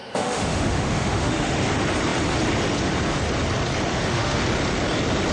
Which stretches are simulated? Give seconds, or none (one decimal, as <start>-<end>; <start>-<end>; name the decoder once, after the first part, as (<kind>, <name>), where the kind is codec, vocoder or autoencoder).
0.0-1.6 (autoencoder, DAC-VAE); 3.9-4.4